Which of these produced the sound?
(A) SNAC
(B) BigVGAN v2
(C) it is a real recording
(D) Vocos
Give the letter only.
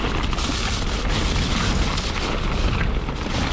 C